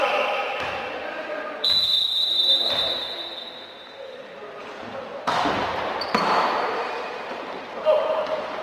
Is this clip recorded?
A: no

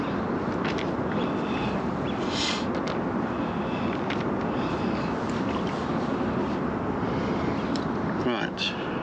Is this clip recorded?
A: yes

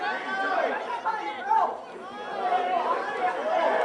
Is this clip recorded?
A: yes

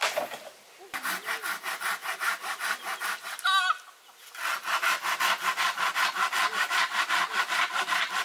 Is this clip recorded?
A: yes